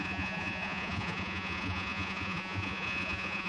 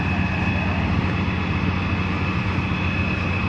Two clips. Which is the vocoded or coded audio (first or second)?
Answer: first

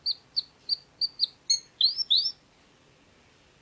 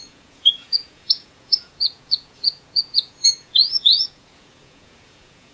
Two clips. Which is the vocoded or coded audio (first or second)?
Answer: second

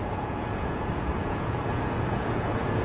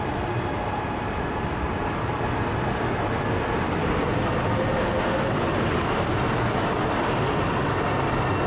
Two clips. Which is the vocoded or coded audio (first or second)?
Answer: first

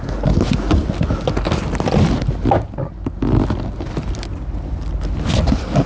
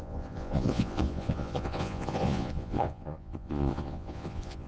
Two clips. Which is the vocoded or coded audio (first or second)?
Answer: second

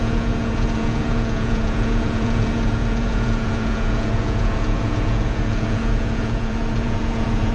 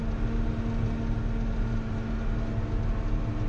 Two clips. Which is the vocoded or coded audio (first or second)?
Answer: first